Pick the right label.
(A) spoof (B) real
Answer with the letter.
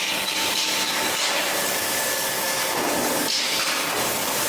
A